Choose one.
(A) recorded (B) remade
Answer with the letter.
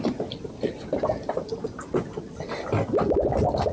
A